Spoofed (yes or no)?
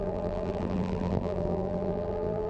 yes